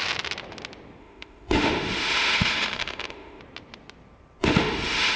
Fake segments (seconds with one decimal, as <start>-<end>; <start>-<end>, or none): 1.0-3.4; 4.4-5.2